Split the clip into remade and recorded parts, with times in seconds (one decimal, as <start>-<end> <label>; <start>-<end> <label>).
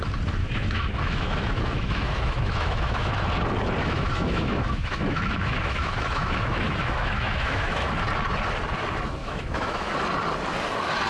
0.0-0.4 recorded; 0.4-3.1 remade; 3.1-3.8 recorded; 3.8-7.9 remade; 7.9-9.2 recorded; 9.2-9.9 remade; 9.9-11.1 recorded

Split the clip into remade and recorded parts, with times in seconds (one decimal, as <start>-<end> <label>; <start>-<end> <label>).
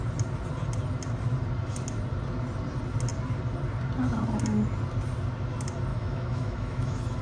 0.0-5.9 recorded; 5.9-7.2 remade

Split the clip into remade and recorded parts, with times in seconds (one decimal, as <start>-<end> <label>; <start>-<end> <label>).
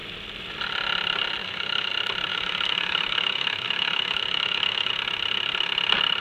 0.0-1.4 recorded; 1.4-1.9 remade; 1.9-2.3 recorded; 2.3-4.9 remade; 4.9-6.2 recorded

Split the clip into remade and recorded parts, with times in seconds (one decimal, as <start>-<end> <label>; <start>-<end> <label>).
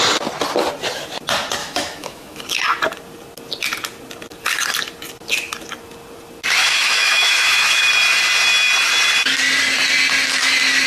0.0-1.6 recorded; 1.6-2.4 remade; 2.4-6.6 recorded; 6.6-7.9 remade; 7.9-10.9 recorded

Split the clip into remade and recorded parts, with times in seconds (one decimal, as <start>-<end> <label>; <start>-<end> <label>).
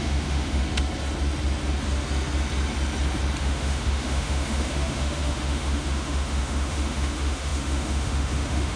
0.0-0.6 remade; 0.6-3.4 recorded; 3.4-8.8 remade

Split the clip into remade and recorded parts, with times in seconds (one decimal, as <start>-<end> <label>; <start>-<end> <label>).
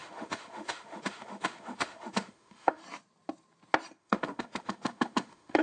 0.0-2.8 remade; 2.8-4.0 recorded; 4.0-5.6 remade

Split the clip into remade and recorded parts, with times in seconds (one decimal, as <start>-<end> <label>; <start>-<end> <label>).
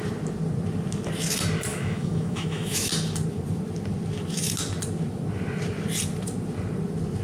0.0-1.7 recorded; 1.7-2.9 remade; 2.9-7.2 recorded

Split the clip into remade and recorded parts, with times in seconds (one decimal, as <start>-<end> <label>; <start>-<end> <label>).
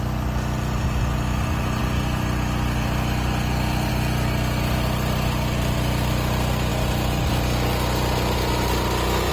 0.0-9.3 recorded